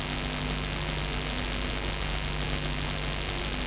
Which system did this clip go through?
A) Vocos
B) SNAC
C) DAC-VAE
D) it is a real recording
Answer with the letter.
D